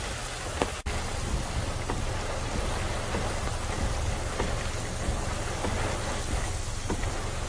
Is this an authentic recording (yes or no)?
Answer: yes